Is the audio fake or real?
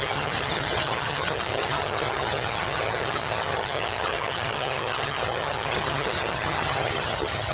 fake